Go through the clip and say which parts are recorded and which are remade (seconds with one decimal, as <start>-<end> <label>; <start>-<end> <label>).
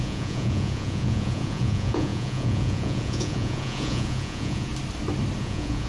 0.0-4.7 remade; 4.7-5.4 recorded; 5.4-5.9 remade